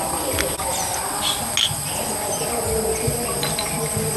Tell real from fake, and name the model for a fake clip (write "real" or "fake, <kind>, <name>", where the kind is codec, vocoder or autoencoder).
real